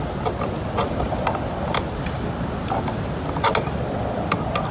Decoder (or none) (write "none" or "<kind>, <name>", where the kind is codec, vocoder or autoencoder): none